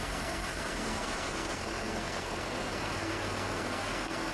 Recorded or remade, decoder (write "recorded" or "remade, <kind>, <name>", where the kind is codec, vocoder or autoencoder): remade, codec, SNAC